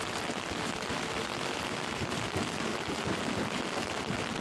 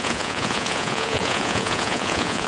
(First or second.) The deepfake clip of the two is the second